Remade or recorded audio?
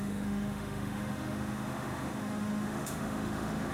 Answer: remade